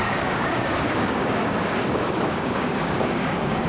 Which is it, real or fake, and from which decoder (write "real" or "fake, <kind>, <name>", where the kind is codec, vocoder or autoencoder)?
fake, codec, DAC